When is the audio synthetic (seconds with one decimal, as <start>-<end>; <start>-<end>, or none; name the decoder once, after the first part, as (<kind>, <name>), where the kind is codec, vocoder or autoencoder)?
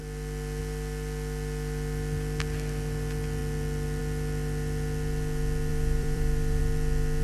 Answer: 5.7-6.6 (vocoder, BigVGAN v2)